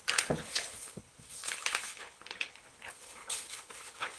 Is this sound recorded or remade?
remade